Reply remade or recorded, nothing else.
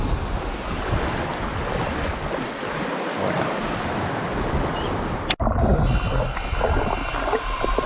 recorded